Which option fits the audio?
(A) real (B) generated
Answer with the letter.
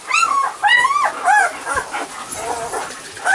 A